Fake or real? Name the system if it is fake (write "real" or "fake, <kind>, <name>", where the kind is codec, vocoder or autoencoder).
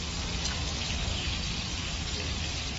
real